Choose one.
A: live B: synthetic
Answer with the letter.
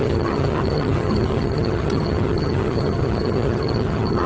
B